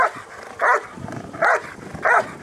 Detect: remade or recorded recorded